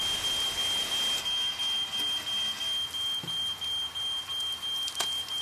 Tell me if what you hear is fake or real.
real